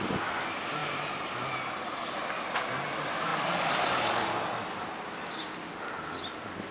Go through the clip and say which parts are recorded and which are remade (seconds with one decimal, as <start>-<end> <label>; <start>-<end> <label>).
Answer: 0.0-6.7 recorded